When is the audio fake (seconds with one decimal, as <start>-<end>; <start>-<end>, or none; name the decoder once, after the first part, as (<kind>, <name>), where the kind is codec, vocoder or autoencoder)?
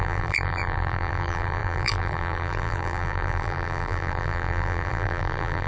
0.0-5.7 (vocoder, BigVGAN v2)